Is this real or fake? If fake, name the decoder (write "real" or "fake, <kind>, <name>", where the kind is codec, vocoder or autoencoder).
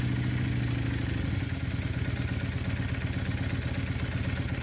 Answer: real